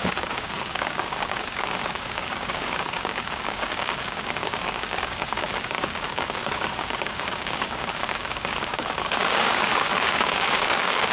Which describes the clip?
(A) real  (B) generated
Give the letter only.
B